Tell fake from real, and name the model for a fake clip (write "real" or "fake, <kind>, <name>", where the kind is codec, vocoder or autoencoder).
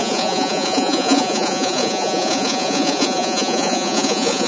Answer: fake, vocoder, Vocos